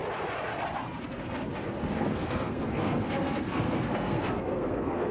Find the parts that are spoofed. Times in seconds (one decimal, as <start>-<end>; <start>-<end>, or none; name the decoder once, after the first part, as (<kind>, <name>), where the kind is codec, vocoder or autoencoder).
1.8-5.1 (codec, SNAC)